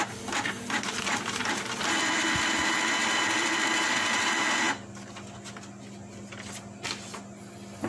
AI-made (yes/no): no